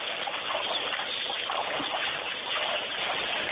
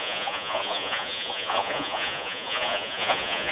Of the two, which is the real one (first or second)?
first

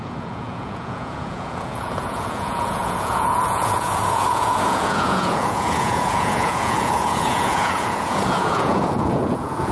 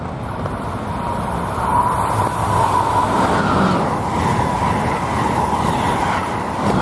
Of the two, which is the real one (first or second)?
second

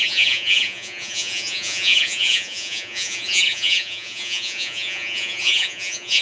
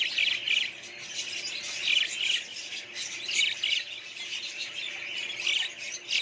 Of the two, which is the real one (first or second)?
second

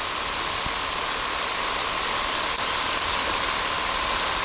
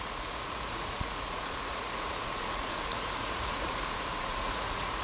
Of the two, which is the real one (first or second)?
first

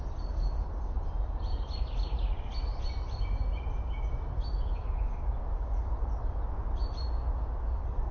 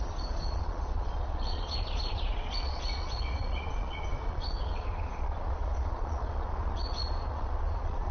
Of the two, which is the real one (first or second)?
first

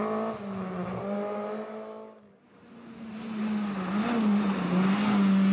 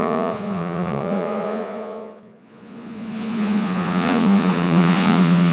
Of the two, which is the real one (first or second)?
first